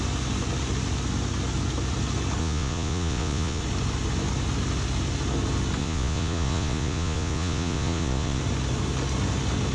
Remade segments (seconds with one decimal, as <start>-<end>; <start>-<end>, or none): 2.4-3.6; 5.8-8.4